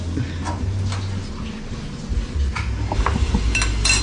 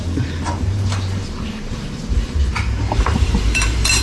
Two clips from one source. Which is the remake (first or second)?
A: second